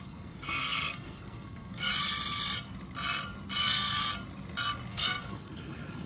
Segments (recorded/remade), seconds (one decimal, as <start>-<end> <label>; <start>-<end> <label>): 0.0-1.9 remade; 1.9-3.6 recorded; 3.6-4.0 remade; 4.0-4.9 recorded; 4.9-6.1 remade